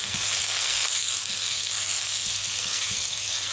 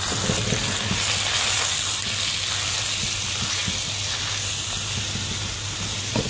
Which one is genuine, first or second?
second